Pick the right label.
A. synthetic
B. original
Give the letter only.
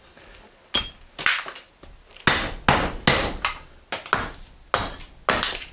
B